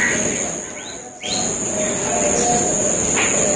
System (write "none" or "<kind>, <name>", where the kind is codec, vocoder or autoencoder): none